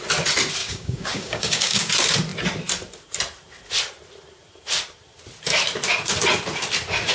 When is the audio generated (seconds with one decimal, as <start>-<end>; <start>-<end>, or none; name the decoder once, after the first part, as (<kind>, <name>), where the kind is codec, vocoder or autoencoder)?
0.6-1.9 (codec, DAC)